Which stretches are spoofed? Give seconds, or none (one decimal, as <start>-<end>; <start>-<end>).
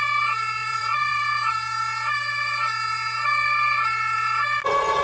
0.6-1.2